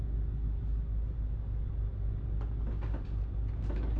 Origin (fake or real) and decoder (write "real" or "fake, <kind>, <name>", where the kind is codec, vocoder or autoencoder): real